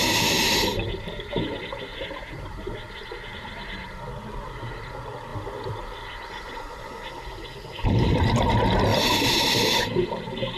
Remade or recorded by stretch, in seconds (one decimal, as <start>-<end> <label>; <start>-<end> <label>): 0.0-0.7 recorded; 0.7-1.3 remade; 1.3-1.9 recorded; 1.9-2.7 remade; 2.7-5.3 recorded; 5.3-8.2 remade; 8.2-8.9 recorded; 8.9-9.5 remade; 9.5-10.6 recorded